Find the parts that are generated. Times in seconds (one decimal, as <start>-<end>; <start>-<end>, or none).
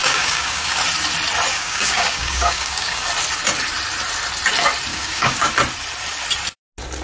0.0-0.8; 1.5-3.1; 4.9-5.5